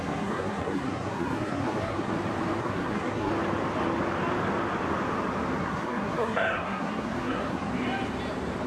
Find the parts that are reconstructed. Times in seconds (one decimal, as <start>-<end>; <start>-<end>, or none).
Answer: 0.0-2.1; 2.6-3.3; 5.6-7.7